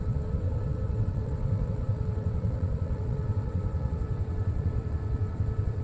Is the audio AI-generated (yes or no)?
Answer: yes